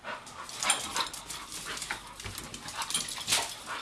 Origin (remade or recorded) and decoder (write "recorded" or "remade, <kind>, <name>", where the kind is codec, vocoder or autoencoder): recorded